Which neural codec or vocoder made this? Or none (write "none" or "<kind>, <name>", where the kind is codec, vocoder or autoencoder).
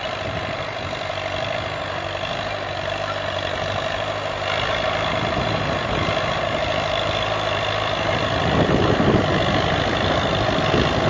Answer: none